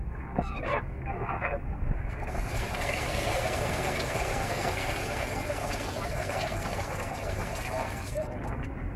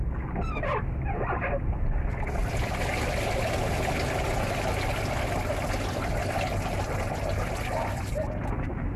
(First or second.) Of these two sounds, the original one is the second